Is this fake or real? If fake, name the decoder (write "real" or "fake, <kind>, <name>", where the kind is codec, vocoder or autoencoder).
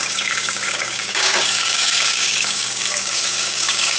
fake, codec, DAC